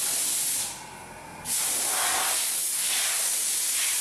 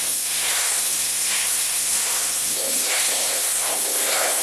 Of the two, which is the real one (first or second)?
first